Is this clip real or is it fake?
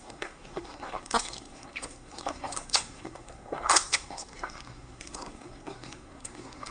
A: fake